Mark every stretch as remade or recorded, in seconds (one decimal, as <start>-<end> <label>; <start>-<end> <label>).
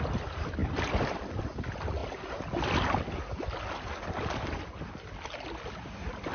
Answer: 0.0-6.3 recorded